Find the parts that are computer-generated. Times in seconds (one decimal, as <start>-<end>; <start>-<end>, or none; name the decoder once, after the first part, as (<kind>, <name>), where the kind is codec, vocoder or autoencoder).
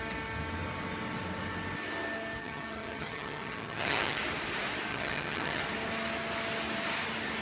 2.4-4.2 (vocoder, HiFi-GAN); 4.9-5.6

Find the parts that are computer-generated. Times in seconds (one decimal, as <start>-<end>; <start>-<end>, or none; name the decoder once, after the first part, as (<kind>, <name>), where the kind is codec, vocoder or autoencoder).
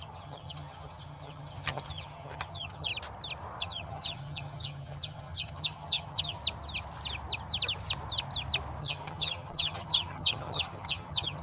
0.0-2.9 (vocoder, HiFi-GAN); 3.6-6.4; 8.8-11.4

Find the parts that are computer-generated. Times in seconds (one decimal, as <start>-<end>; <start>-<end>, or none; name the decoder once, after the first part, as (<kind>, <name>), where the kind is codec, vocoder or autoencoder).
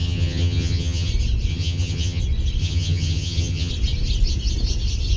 0.0-1.1 (vocoder, HiFi-GAN); 1.5-2.2; 2.6-3.7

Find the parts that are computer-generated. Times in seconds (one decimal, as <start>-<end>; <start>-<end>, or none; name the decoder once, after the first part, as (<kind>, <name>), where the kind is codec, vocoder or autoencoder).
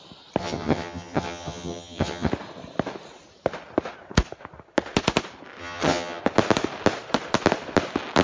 0.4-2.3 (vocoder, HiFi-GAN); 5.6-6.2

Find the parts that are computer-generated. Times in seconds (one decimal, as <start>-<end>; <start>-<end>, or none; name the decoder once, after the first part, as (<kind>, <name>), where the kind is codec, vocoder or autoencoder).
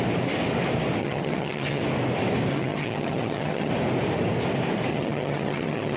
1.0-1.8 (vocoder, HiFi-GAN); 2.5-3.7; 4.9-6.0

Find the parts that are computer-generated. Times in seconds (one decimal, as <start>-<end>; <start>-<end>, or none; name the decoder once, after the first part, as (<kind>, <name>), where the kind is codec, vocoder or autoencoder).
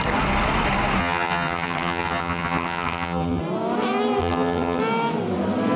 1.0-3.4 (vocoder, HiFi-GAN); 4.2-4.8